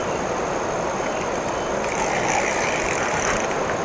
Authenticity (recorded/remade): recorded